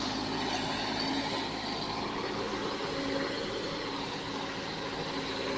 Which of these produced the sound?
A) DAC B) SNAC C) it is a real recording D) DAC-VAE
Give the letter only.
C